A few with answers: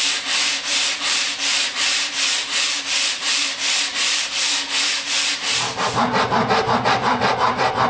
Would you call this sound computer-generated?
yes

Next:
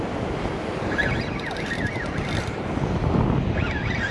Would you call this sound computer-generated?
no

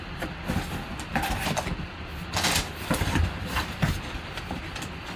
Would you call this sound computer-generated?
no